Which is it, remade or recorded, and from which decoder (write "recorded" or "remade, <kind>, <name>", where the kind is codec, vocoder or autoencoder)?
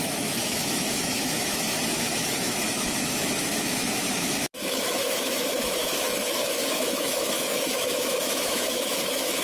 remade, autoencoder, DAC-VAE